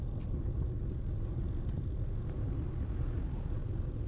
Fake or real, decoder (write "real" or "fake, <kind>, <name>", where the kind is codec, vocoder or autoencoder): real